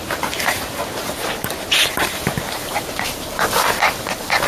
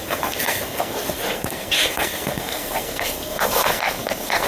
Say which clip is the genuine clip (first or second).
first